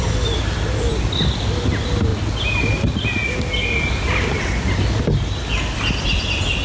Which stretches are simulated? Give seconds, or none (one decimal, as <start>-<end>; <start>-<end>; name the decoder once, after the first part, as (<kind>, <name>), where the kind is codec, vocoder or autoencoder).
none